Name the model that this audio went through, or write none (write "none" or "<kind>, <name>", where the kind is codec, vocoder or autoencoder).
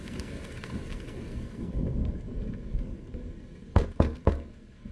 codec, SNAC